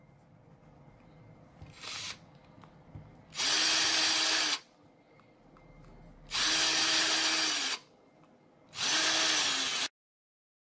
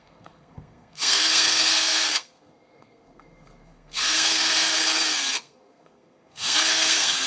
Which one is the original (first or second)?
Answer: first